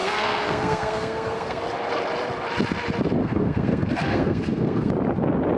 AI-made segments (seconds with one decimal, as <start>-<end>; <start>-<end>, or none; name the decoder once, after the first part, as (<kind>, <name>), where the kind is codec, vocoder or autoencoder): 0.0-1.6 (codec, SNAC); 3.2-4.9